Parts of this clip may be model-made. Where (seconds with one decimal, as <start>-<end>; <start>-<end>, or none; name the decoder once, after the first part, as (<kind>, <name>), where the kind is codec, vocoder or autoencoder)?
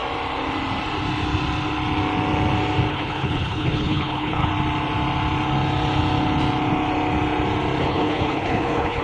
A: 2.9-4.5 (codec, HILCodec); 7.8-9.0